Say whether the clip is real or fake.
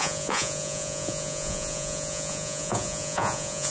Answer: fake